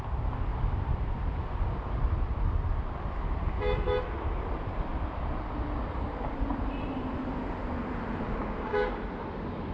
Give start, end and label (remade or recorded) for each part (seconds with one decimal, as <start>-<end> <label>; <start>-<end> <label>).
0.0-8.4 recorded; 8.4-8.9 remade; 8.9-9.7 recorded